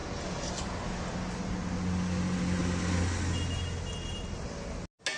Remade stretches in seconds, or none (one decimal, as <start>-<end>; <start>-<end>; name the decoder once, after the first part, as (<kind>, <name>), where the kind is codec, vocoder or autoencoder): none